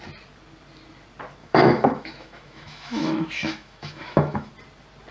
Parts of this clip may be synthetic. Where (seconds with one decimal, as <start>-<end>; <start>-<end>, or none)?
1.4-4.5